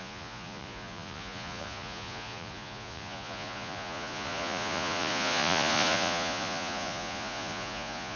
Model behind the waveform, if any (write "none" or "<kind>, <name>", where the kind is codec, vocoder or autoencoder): vocoder, Vocos